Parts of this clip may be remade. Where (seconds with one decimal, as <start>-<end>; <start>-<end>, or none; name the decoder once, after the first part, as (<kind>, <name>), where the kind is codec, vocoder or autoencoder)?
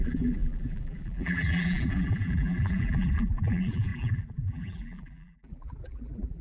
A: 0.0-6.4 (vocoder, BigVGAN v2)